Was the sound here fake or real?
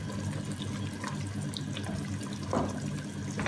real